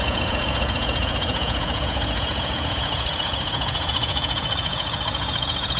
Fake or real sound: fake